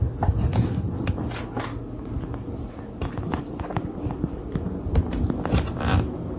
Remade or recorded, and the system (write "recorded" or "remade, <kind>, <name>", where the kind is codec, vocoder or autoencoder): recorded